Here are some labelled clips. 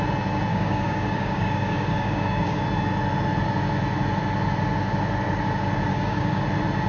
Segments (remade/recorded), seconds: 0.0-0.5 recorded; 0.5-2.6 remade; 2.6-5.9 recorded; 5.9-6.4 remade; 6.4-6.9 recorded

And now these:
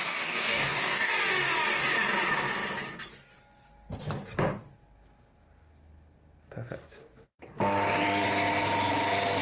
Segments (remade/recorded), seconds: 0.0-1.1 remade; 1.1-9.4 recorded

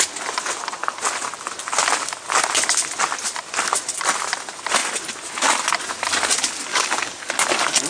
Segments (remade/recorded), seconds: 0.0-6.7 recorded; 6.7-7.3 remade; 7.3-7.9 recorded

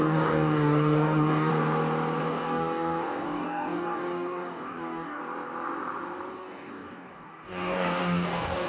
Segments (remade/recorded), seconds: 0.0-1.5 remade; 1.5-2.2 recorded; 2.2-5.2 remade; 5.2-6.3 recorded; 6.3-8.7 remade